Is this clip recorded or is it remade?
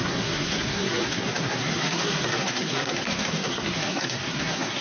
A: remade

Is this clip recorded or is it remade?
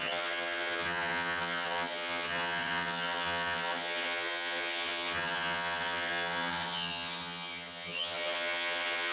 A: remade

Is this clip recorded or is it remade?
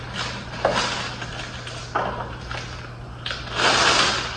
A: recorded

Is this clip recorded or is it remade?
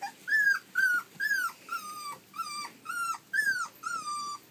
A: recorded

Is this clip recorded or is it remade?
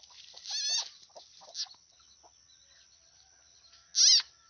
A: recorded